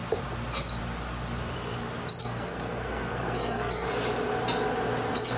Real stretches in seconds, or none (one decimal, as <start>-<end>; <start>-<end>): 0.0-2.2; 3.9-5.4